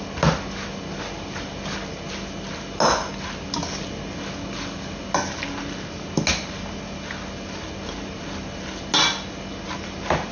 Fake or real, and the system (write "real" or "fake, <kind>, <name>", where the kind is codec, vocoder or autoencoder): real